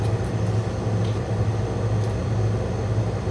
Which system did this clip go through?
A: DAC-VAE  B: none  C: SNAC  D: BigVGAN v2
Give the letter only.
B